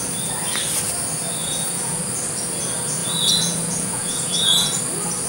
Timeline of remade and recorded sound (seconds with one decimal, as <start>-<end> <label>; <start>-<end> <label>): 0.0-1.4 recorded; 1.4-2.0 remade; 2.0-3.0 recorded; 3.0-4.8 remade; 4.8-5.3 recorded

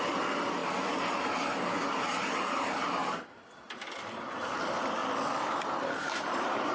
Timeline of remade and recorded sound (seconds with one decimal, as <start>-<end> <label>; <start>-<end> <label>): 0.0-6.7 remade